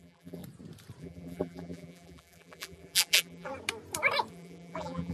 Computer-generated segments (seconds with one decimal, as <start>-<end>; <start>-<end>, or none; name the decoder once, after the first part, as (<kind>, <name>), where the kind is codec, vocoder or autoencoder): 0.0-0.4 (vocoder, BigVGAN v2); 1.0-3.5; 4.3-5.1